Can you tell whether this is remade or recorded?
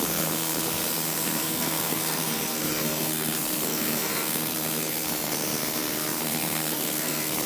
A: remade